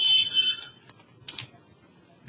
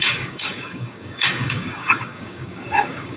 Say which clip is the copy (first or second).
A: second